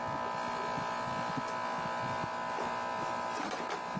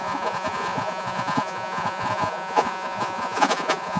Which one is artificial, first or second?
second